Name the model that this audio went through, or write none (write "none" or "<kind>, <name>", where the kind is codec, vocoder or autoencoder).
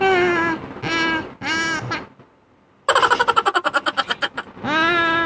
none